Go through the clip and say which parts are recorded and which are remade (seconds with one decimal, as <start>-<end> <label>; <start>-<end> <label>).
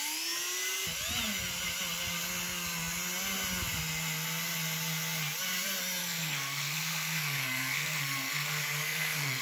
0.0-6.0 recorded; 6.0-9.4 remade